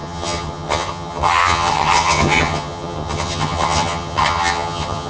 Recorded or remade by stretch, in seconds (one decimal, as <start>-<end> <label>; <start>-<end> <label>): 0.0-5.1 remade